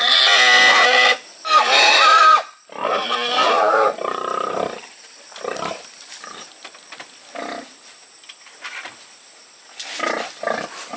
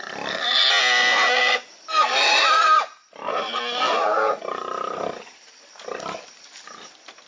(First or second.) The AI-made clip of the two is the first